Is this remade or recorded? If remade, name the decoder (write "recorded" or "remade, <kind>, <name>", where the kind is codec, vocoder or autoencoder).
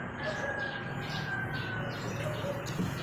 remade, vocoder, Vocos